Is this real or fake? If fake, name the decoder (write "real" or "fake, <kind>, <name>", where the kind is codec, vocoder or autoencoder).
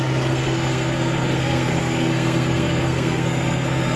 fake, codec, SNAC